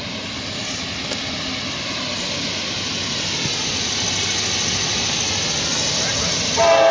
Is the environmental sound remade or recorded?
recorded